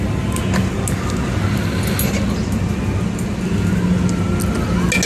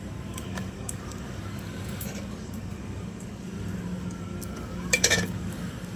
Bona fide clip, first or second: first